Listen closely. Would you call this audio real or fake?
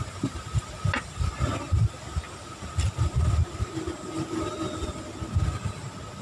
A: real